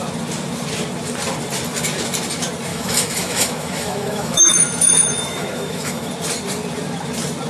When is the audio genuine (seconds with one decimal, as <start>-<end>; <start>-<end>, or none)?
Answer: 0.0-2.7; 6.1-7.5